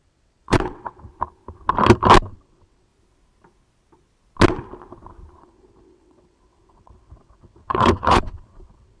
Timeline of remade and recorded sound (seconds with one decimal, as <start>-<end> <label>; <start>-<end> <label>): 0.0-1.1 remade; 1.1-2.3 recorded; 2.3-2.9 remade; 2.9-5.4 recorded; 5.4-9.0 remade